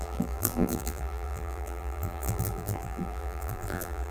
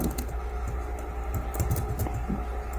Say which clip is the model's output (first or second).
first